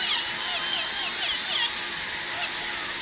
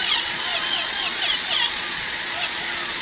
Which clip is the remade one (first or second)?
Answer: second